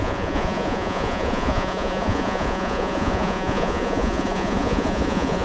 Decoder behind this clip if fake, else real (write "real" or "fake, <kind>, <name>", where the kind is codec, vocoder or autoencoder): fake, vocoder, Vocos